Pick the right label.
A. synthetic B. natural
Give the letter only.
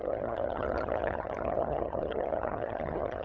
A